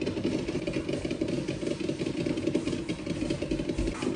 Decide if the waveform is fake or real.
real